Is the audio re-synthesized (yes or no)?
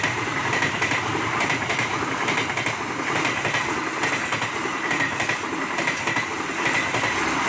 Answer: no